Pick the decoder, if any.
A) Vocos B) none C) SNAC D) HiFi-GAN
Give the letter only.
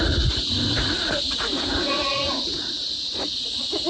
A